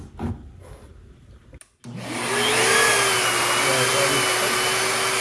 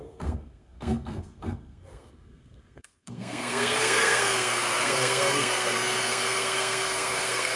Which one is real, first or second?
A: first